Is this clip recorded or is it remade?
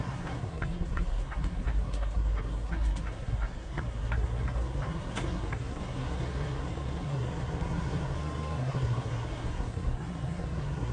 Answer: remade